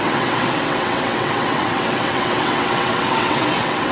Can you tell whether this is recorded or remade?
remade